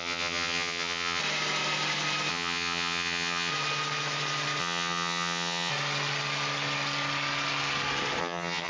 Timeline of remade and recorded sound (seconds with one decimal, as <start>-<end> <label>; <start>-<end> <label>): 0.0-1.2 remade; 1.2-2.3 recorded; 2.3-3.5 remade; 3.5-4.6 recorded; 4.6-5.7 remade; 5.7-8.2 recorded; 8.2-8.7 remade